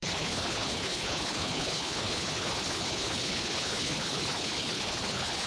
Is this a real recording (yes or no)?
no